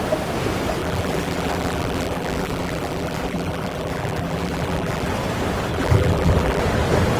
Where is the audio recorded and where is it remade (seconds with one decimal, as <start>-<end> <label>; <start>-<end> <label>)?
0.0-0.8 recorded; 0.8-5.1 remade; 5.1-5.7 recorded; 5.7-6.6 remade; 6.6-7.2 recorded